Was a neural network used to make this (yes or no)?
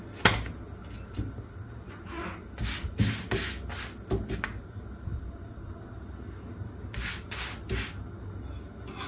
no